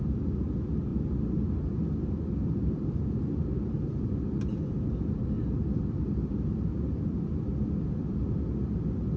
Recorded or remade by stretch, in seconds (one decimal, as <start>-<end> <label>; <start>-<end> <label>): 0.0-9.2 recorded